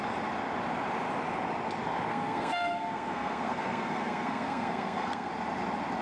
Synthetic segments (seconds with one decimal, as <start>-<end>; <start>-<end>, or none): 2.1-5.3